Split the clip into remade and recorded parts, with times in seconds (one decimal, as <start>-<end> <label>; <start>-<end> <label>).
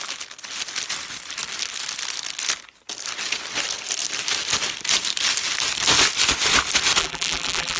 0.0-7.0 recorded; 7.0-7.8 remade